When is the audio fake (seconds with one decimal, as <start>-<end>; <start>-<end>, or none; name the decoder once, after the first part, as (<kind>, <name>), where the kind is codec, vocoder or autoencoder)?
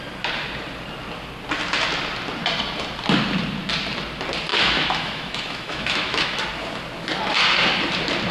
4.5-6.4 (autoencoder, DAC-VAE)